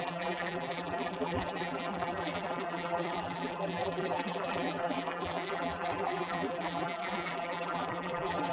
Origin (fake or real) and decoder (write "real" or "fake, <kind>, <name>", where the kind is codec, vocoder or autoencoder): fake, vocoder, BigVGAN v2